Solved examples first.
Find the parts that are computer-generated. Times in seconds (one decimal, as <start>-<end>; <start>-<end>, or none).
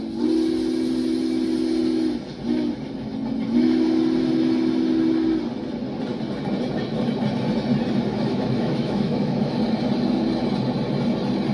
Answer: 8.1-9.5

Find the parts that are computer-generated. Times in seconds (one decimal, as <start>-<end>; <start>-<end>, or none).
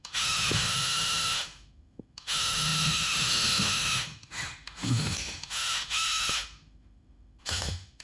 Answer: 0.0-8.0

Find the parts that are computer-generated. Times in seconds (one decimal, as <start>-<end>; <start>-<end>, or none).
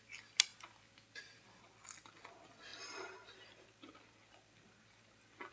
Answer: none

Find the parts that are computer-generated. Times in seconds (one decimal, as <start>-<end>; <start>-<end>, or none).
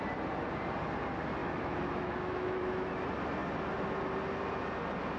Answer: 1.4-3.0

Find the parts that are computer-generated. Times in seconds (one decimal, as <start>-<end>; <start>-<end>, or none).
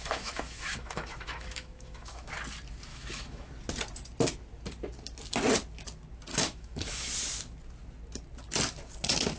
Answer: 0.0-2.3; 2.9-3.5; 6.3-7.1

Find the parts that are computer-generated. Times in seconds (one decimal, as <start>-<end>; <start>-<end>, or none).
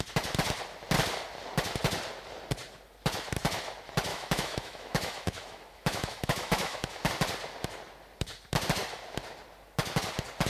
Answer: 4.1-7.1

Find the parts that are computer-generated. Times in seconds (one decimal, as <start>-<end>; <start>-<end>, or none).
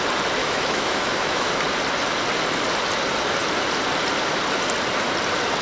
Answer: 0.4-1.5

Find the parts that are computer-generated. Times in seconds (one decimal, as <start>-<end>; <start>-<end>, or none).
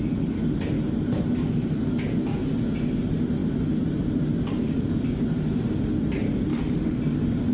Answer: 6.5-7.0